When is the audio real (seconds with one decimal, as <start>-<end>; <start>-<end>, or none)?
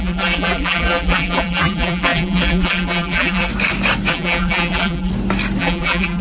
3.5-4.1; 5.1-5.6